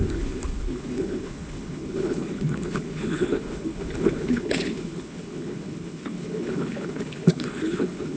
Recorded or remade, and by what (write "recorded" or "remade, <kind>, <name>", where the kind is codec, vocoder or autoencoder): remade, codec, HILCodec